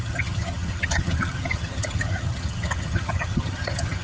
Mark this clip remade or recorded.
remade